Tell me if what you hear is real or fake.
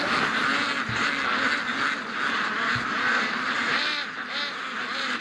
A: real